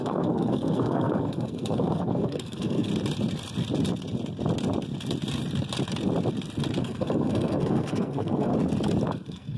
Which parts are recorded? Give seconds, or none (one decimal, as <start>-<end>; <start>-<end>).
2.9-6.8; 8.5-9.1